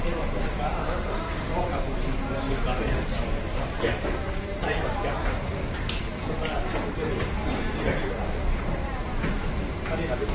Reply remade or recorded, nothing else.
remade